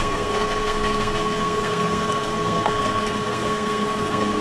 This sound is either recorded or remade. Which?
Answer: remade